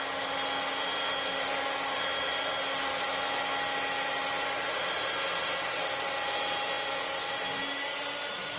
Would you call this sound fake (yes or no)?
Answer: no